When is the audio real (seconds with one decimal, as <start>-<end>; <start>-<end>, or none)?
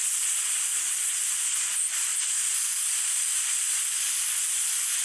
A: 1.4-5.0